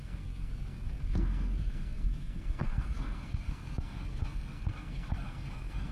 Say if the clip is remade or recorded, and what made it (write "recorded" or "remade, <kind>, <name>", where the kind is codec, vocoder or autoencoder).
remade, codec, SNAC